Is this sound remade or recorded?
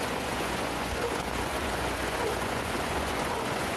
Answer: remade